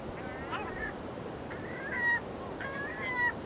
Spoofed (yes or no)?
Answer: yes